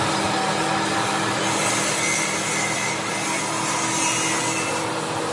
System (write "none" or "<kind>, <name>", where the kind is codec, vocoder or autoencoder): none